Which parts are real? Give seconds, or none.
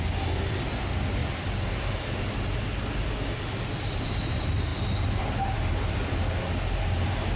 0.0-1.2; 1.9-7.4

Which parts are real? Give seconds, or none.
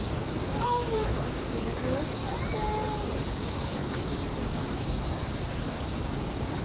2.2-3.3